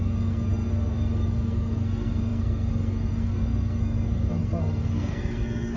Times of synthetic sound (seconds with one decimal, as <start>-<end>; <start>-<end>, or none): 0.0-5.8